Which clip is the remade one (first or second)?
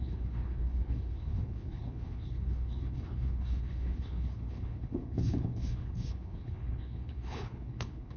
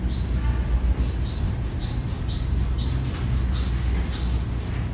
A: first